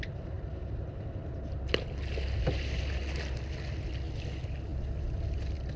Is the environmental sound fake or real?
real